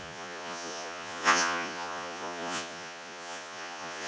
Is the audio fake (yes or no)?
yes